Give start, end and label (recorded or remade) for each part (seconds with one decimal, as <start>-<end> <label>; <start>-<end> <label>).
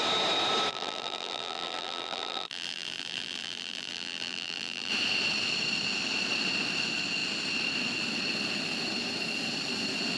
0.0-0.7 recorded; 0.7-4.9 remade; 4.9-10.2 recorded